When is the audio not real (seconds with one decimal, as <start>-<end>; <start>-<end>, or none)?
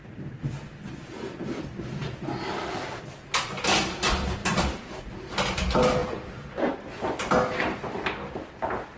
none